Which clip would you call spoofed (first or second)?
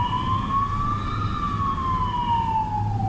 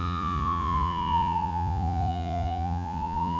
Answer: second